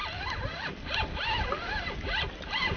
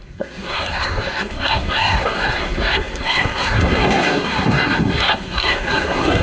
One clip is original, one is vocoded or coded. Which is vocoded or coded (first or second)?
second